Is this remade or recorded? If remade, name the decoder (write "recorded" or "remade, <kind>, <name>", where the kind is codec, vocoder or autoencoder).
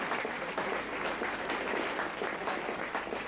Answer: recorded